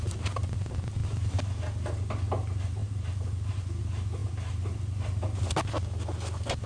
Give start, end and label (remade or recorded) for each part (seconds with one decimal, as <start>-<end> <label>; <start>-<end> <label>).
0.0-6.7 recorded